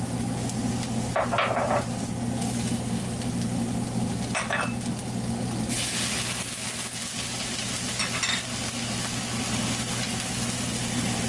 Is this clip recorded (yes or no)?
yes